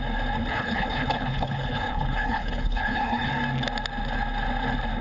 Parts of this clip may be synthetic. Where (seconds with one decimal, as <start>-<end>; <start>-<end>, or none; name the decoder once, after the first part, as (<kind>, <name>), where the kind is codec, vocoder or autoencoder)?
0.5-3.3 (codec, HILCodec)